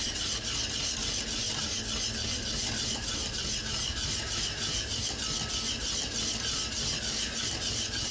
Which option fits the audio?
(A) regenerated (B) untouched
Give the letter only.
B